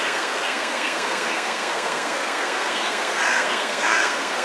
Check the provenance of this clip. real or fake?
fake